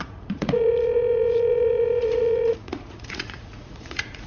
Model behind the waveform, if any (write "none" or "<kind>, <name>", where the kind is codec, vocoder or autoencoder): vocoder, Vocos